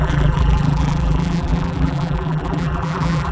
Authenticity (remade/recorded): remade